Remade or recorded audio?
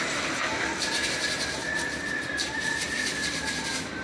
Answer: recorded